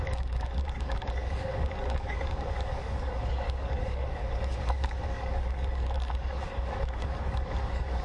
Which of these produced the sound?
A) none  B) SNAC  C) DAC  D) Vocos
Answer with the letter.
C